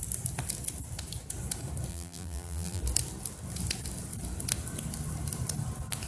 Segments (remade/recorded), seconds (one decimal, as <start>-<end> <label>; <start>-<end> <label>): 0.0-1.9 recorded; 1.9-2.8 remade; 2.8-6.1 recorded